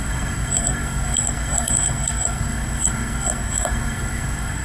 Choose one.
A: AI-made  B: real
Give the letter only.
A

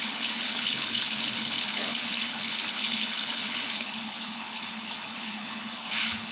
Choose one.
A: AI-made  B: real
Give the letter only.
A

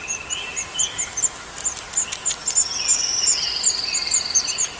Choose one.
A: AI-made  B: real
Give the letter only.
B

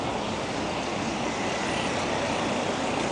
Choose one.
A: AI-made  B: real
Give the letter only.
B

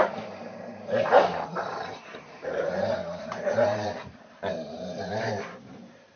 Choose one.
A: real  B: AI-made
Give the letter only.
B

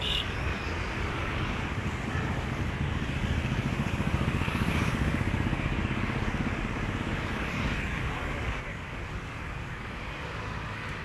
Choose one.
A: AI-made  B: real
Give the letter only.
A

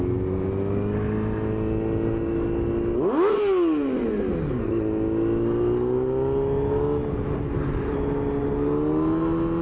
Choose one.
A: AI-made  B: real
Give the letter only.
B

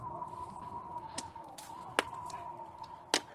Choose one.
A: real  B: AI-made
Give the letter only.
A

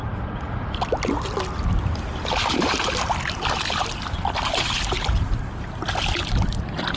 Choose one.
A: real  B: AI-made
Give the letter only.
A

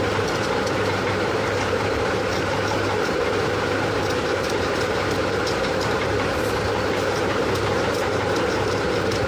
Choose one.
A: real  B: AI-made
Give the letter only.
B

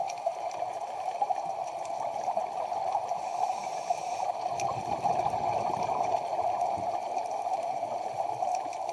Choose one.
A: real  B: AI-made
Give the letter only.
B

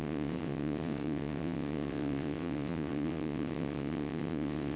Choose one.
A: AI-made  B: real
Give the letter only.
A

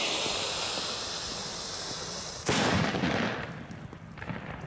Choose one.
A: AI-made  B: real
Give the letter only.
A